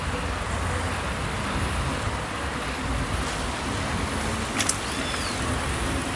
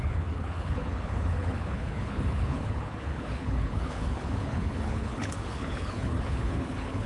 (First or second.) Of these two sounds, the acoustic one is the first